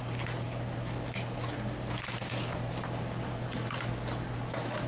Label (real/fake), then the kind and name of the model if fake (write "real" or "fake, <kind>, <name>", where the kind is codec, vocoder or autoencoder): real